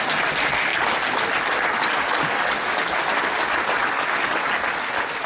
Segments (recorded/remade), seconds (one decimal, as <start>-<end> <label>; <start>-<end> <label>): 0.0-5.3 recorded